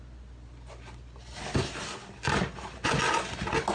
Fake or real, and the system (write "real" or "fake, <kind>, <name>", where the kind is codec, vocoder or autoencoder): real